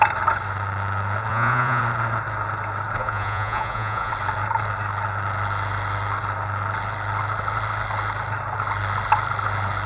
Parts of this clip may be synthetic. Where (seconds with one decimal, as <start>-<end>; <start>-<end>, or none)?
1.3-1.8; 3.0-4.1